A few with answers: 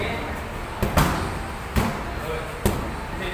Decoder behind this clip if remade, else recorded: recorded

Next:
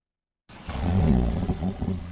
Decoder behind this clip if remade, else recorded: remade, vocoder, Vocos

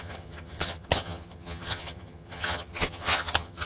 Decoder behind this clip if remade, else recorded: remade, vocoder, HiFi-GAN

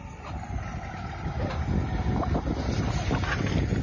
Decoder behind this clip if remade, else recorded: recorded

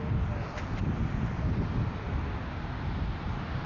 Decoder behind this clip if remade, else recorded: recorded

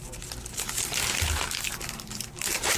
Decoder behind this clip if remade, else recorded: recorded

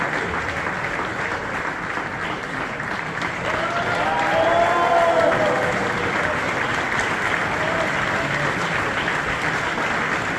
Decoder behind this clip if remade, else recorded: recorded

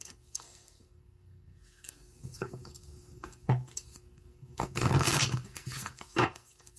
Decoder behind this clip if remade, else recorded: remade, codec, SNAC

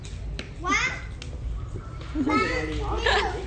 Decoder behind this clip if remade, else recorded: recorded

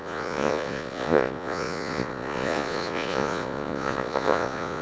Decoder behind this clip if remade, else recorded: remade, vocoder, Vocos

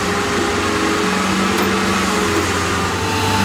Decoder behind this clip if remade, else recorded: recorded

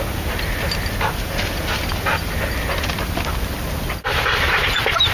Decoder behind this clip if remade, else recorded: recorded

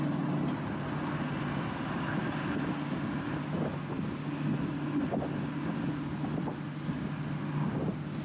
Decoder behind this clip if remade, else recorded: recorded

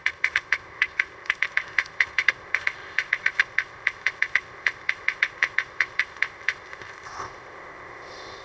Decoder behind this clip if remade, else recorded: remade, codec, ZipCodec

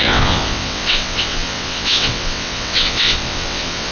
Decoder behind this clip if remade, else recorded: remade, vocoder, WaveNeXt